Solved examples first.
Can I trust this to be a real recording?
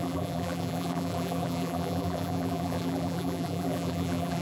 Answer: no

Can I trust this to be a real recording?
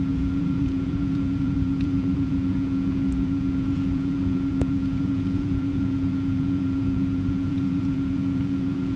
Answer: no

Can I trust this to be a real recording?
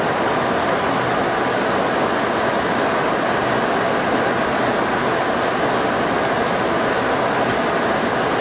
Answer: yes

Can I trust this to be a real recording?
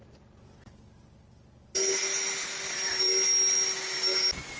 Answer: yes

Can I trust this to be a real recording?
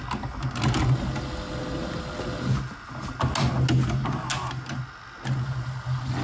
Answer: yes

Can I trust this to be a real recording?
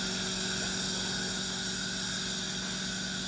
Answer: yes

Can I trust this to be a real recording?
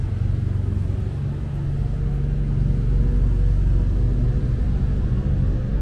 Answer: yes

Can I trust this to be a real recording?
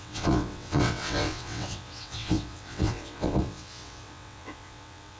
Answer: no